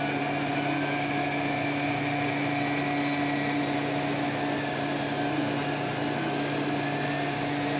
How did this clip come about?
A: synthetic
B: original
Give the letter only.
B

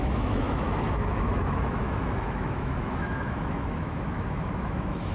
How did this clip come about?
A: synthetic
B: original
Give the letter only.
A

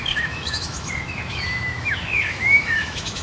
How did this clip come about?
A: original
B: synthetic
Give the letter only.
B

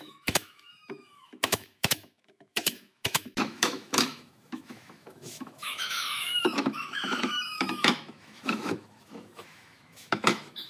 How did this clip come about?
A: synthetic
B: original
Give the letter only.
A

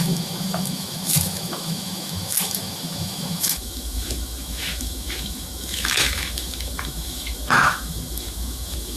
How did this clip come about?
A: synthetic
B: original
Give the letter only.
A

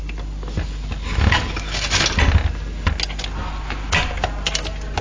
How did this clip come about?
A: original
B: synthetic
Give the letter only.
A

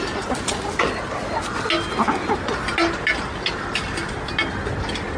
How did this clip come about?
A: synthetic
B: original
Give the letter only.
B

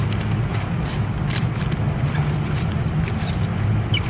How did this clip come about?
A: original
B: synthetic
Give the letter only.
A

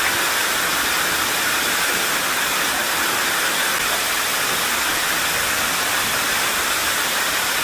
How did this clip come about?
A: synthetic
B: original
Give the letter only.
B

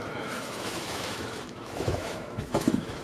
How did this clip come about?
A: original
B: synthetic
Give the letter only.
B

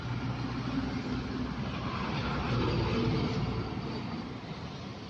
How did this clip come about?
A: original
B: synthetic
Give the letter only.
A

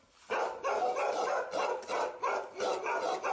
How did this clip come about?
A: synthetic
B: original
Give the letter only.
B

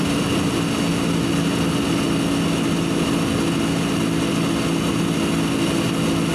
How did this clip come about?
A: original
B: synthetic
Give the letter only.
A